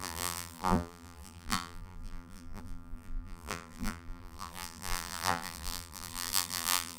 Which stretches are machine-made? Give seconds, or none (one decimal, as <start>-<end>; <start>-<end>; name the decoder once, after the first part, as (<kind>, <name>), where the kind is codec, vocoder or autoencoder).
0.0-7.0 (vocoder, BigVGAN v2)